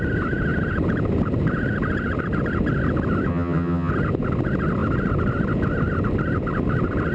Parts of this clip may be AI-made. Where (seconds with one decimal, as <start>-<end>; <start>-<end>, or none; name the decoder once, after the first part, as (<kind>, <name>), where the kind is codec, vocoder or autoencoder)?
3.3-3.9 (vocoder, HiFi-GAN)